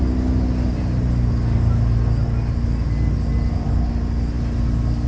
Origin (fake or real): real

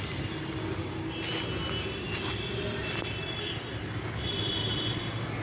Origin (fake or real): real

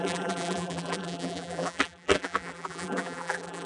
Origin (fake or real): fake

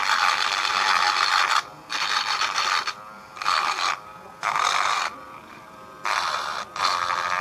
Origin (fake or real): real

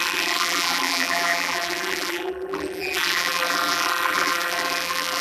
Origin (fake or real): fake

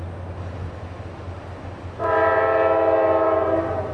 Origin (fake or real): real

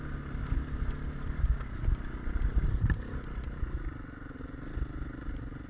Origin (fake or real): real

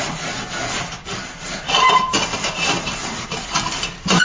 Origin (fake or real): fake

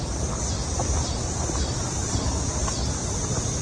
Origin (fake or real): real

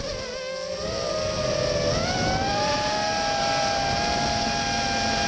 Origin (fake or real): real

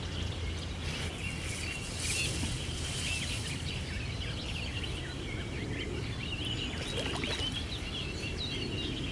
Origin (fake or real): real